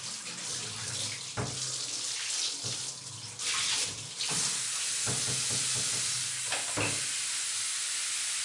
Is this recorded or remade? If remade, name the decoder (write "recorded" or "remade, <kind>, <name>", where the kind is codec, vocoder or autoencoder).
recorded